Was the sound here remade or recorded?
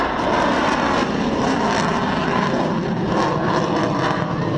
recorded